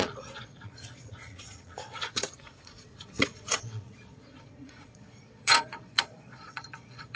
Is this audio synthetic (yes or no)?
yes